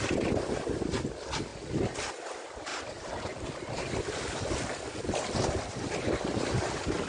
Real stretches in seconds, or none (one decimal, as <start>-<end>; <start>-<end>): 0.0-2.7; 3.3-7.1